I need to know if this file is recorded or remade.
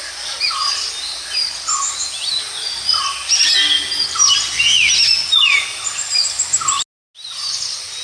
recorded